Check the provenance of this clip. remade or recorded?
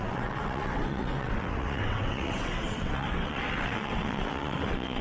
remade